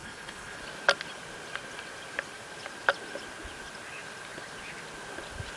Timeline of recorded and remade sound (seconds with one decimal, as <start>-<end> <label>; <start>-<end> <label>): 0.0-0.6 remade; 0.6-5.6 recorded